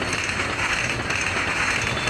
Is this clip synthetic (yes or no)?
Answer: no